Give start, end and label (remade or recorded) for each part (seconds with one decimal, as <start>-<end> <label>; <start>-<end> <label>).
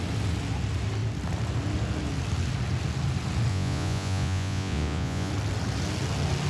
0.0-3.5 recorded; 3.5-5.3 remade; 5.3-6.5 recorded